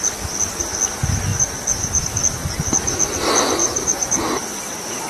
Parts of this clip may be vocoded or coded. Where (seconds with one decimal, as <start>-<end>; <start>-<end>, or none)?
1.3-2.0; 3.6-4.5

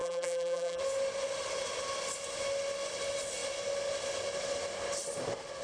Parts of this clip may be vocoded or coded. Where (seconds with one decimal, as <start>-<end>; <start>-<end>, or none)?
0.0-0.8

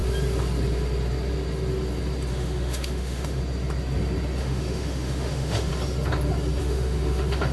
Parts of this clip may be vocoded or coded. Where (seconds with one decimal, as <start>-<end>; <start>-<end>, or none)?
2.3-3.4; 4.4-5.7; 6.6-7.5

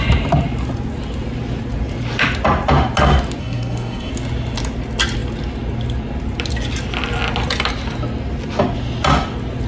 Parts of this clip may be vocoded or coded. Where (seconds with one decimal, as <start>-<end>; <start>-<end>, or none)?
3.4-4.1

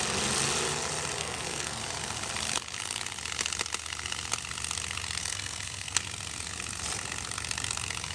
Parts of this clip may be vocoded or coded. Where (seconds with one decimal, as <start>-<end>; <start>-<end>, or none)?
1.2-1.8; 5.2-6.0